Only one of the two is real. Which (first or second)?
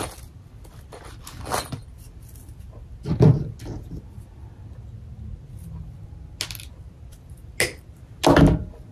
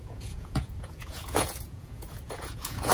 first